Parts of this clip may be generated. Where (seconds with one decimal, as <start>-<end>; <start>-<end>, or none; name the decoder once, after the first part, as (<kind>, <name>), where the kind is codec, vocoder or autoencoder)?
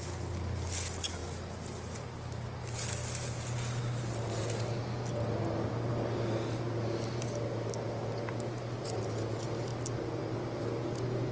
none